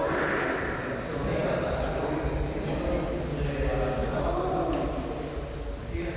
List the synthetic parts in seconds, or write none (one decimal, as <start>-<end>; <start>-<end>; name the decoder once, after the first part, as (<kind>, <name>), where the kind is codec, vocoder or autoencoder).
none